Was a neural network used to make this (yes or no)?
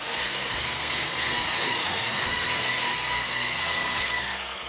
yes